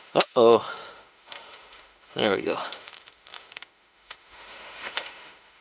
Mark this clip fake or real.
fake